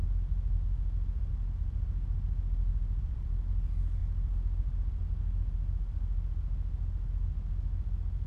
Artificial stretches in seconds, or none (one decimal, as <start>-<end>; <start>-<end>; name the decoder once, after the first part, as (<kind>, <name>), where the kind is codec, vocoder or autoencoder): 2.7-3.5 (vocoder, BigVGAN v2)

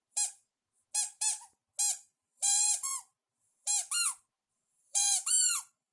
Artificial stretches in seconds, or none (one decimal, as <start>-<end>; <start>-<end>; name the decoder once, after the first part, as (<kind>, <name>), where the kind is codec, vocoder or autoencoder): 2.0-2.9 (vocoder, BigVGAN v2); 4.5-5.9

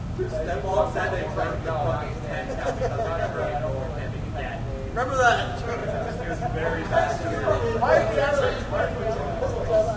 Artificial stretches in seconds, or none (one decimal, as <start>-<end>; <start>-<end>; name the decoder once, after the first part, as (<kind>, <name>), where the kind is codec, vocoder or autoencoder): none

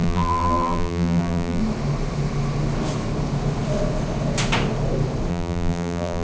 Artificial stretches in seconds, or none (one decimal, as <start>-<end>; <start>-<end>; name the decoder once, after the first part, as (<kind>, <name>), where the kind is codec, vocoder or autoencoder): 0.0-1.6 (vocoder, BigVGAN v2); 5.3-6.2

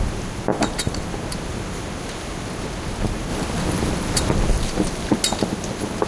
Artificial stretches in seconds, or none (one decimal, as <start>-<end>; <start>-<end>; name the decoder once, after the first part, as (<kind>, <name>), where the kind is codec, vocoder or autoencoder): 0.5-1.0 (vocoder, BigVGAN v2); 3.3-4.3

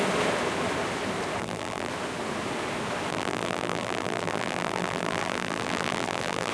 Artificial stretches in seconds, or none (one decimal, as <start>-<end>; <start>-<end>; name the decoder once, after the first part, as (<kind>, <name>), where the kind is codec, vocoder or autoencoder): 1.4-1.9 (vocoder, BigVGAN v2); 3.1-6.5